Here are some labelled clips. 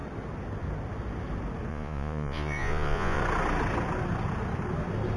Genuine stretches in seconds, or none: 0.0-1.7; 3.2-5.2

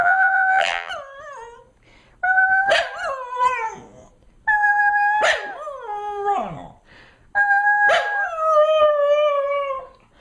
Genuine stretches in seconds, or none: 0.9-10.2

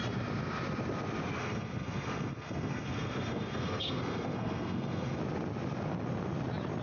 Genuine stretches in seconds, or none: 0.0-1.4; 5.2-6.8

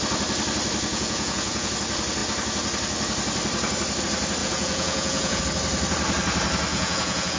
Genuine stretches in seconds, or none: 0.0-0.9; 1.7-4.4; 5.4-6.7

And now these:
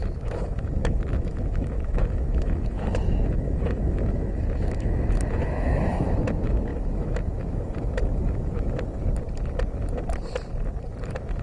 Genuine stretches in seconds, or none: 9.0-11.4